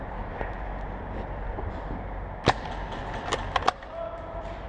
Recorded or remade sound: recorded